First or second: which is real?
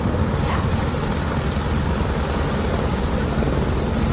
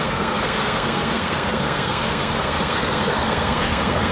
first